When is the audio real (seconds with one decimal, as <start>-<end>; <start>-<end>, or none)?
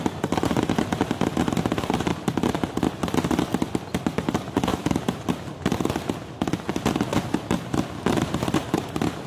0.0-4.7; 5.3-7.1